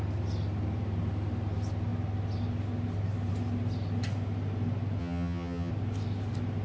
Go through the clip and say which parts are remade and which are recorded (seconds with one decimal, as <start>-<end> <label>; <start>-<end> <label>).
0.0-5.0 recorded; 5.0-5.7 remade; 5.7-6.6 recorded

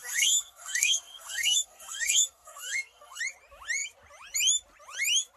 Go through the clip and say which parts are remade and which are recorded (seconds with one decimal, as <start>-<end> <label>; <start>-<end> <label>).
0.0-3.2 remade; 3.2-5.4 recorded

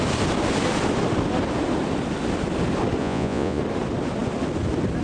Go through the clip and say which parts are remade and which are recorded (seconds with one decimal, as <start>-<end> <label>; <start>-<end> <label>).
0.0-3.0 recorded; 3.0-3.6 remade; 3.6-5.0 recorded